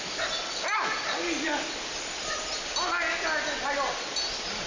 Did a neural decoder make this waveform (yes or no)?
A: no